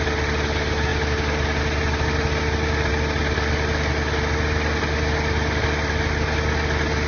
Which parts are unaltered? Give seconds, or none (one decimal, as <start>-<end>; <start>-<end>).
0.0-7.1